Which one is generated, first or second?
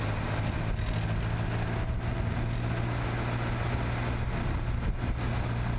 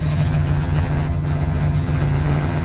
second